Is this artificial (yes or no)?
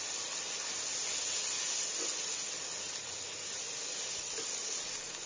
no